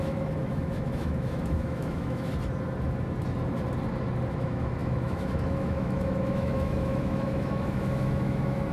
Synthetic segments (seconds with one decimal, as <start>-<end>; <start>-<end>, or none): 0.0-2.3; 4.3-8.7